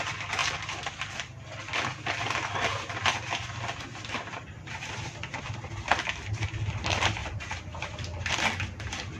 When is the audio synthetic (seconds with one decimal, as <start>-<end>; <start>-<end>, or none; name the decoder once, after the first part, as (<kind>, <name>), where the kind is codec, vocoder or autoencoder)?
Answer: 0.4-1.1 (vocoder, BigVGAN v2); 7.2-8.3